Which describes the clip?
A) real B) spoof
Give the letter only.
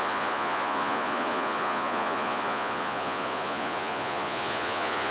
B